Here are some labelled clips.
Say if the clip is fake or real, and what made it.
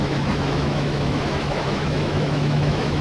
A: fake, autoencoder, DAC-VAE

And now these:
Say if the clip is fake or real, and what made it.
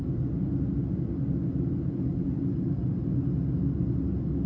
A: real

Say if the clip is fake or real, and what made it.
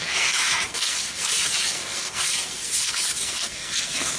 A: fake, codec, SNAC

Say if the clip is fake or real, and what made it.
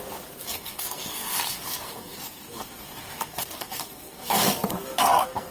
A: fake, codec, SNAC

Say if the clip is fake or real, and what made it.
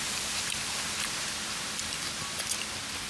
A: real